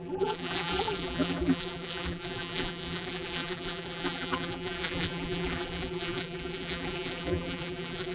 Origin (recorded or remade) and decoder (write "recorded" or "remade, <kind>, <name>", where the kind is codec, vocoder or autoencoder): remade, vocoder, BigVGAN v2